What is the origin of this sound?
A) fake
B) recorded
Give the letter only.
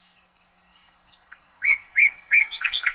A